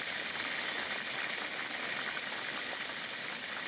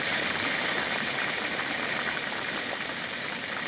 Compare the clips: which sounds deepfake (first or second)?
second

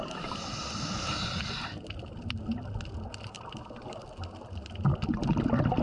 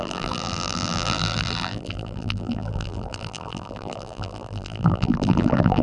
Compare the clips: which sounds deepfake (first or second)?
second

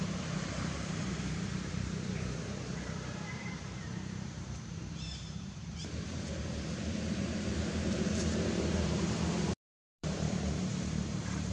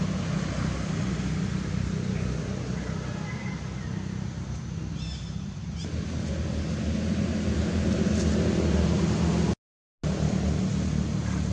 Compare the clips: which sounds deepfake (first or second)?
first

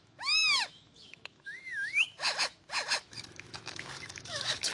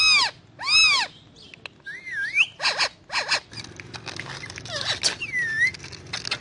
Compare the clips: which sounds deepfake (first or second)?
first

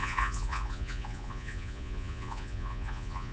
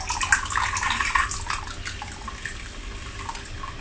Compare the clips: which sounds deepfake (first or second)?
first